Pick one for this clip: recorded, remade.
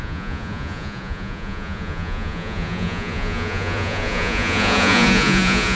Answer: remade